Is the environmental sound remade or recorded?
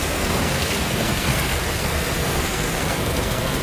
remade